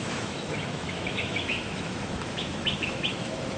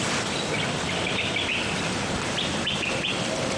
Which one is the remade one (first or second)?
first